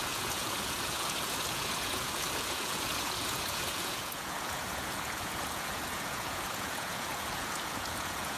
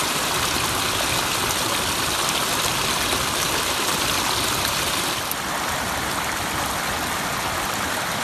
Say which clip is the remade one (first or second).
first